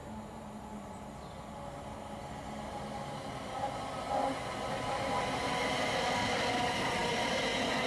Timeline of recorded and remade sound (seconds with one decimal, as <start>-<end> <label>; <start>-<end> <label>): 0.0-7.9 recorded